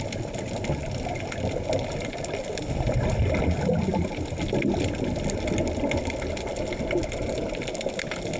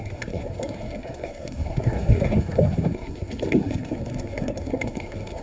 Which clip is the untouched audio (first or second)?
first